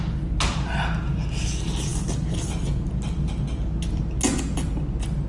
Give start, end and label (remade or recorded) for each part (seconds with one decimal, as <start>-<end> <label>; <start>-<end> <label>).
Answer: 0.0-5.3 recorded